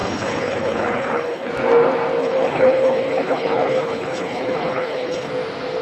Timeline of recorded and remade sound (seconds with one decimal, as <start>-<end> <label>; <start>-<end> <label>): 0.0-1.5 remade; 1.5-2.2 recorded; 2.2-5.3 remade; 5.3-5.8 recorded